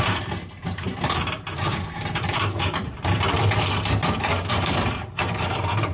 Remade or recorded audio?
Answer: remade